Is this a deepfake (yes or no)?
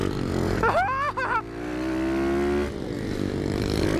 no